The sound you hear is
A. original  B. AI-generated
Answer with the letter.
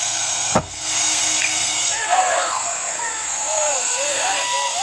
B